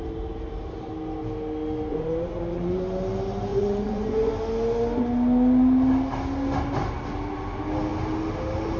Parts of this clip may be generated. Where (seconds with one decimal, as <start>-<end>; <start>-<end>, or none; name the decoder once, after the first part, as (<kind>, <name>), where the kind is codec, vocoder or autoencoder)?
1.9-2.8 (vocoder, Vocos); 3.5-4.3